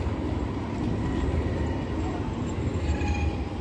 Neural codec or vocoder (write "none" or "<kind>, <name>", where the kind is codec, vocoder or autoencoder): none